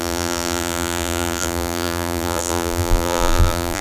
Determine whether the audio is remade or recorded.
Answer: remade